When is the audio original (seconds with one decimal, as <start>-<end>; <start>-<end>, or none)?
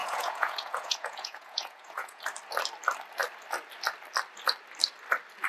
2.2-5.5